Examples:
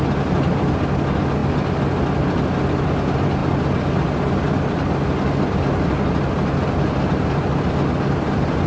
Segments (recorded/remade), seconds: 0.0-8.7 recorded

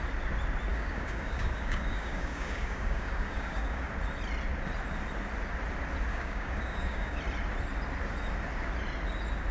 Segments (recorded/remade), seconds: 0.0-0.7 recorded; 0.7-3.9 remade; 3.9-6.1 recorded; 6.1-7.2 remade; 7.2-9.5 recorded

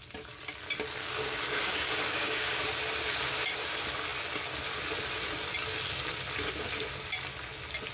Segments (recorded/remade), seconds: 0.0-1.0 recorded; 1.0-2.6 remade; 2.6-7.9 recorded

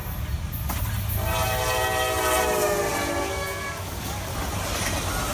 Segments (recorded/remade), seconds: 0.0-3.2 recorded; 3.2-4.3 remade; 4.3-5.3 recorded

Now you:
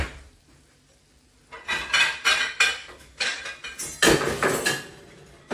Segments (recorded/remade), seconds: 0.0-2.8 recorded; 2.8-3.4 remade; 3.4-5.5 recorded

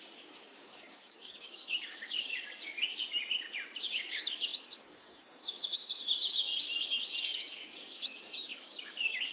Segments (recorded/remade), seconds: 0.0-3.2 remade; 3.2-3.8 recorded; 3.8-9.3 remade

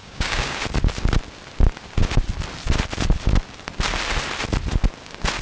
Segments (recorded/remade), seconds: 0.0-0.6 remade; 0.6-5.4 recorded